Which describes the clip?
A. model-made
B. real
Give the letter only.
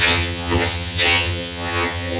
A